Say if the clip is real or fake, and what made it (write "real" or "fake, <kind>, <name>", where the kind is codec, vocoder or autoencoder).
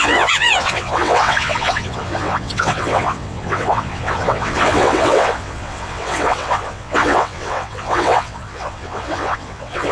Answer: fake, vocoder, WaveNeXt